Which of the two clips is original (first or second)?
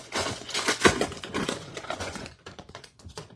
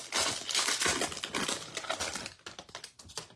second